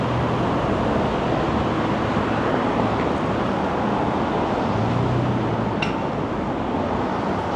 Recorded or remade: recorded